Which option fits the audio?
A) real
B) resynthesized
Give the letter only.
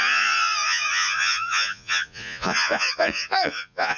B